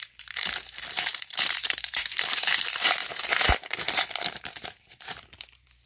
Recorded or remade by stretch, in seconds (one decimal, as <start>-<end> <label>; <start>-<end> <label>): 0.0-5.9 remade